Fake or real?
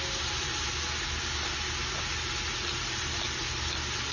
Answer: real